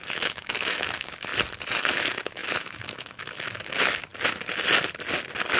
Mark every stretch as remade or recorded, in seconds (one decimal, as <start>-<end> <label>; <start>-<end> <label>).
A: 0.0-1.3 remade; 1.3-1.8 recorded; 1.8-4.1 remade; 4.1-5.6 recorded